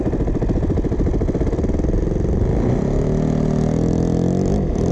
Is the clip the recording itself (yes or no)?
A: yes